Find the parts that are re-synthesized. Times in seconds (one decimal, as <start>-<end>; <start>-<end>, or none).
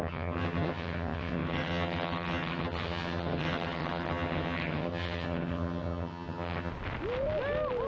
0.0-6.7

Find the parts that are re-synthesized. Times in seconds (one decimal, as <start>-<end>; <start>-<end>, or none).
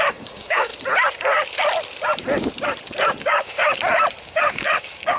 0.0-0.7; 3.2-3.6; 4.2-5.2